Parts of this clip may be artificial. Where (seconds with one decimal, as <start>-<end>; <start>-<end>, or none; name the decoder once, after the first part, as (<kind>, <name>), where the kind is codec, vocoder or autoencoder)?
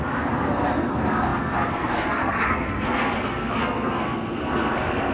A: 0.0-5.1 (codec, SNAC)